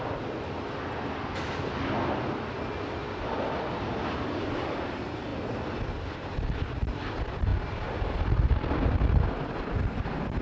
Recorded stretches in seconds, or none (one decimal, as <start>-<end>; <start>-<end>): 0.0-10.4